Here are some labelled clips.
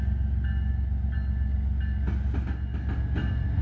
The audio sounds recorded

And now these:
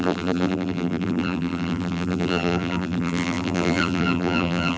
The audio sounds remade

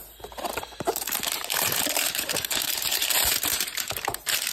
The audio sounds remade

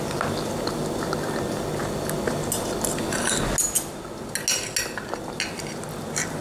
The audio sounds recorded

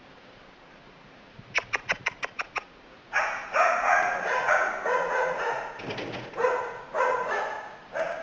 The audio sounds remade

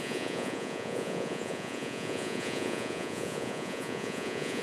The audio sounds remade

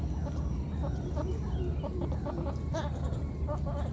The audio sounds recorded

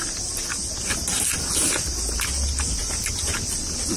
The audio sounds recorded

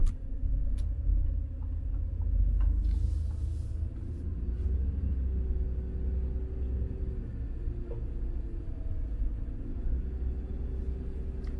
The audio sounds recorded